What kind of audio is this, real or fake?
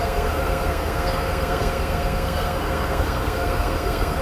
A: fake